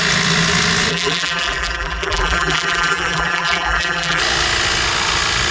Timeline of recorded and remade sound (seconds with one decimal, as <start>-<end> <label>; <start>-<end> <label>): 0.0-0.9 recorded; 0.9-4.2 remade; 4.2-5.5 recorded